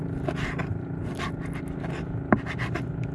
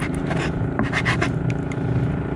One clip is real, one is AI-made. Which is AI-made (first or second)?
second